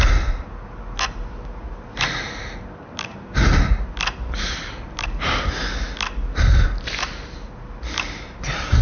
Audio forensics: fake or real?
real